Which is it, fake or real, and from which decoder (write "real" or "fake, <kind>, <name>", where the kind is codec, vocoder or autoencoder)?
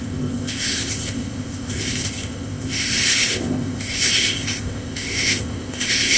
fake, codec, ZipCodec